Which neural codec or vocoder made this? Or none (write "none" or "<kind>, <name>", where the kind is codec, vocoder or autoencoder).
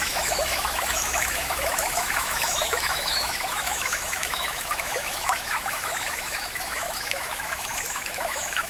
autoencoder, DAC-VAE